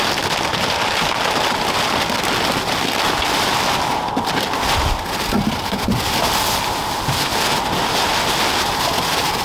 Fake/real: real